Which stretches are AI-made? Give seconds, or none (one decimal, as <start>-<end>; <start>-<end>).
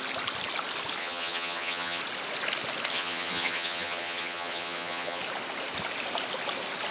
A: 1.0-2.0; 2.9-5.2